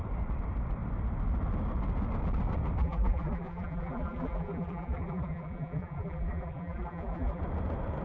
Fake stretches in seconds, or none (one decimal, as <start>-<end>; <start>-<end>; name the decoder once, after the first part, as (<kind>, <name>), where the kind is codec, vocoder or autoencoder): 2.8-7.4 (vocoder, BigVGAN v2)